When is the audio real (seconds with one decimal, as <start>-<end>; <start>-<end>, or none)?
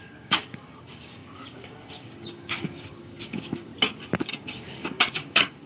3.7-4.2